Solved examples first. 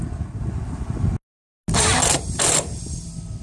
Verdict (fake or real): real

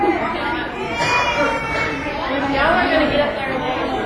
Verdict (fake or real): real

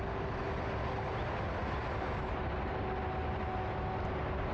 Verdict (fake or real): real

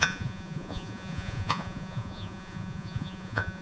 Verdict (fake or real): fake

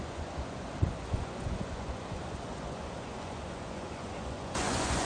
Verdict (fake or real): fake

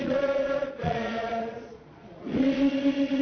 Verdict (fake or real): fake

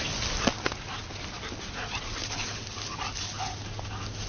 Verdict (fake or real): real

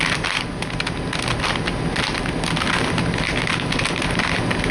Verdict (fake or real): real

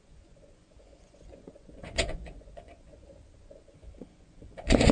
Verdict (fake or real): fake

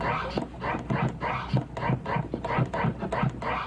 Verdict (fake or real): real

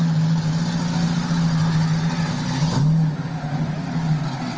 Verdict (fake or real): real